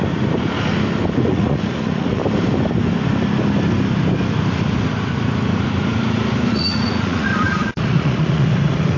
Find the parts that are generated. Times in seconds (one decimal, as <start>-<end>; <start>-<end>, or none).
1.2-2.2; 6.5-9.0